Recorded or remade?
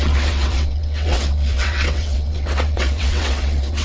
remade